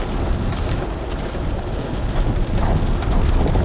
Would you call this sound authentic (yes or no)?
yes